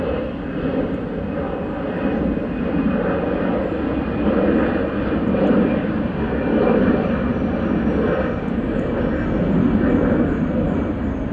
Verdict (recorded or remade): recorded